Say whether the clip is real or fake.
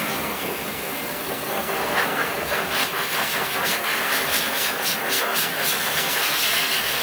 fake